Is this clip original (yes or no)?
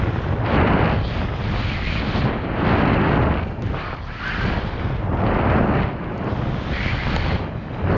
yes